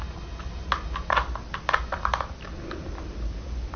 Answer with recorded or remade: recorded